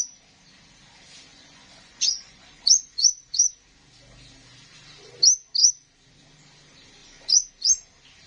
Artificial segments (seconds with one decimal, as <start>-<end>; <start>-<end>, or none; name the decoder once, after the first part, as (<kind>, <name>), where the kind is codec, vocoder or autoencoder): 1.3-3.5 (vocoder, Vocos); 7.0-7.5